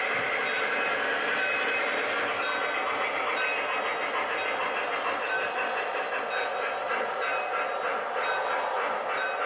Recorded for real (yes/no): yes